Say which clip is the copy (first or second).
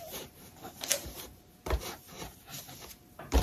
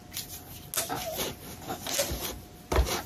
first